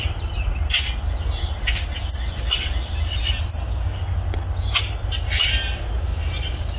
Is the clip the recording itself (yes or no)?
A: yes